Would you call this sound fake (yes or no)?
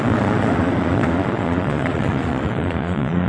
yes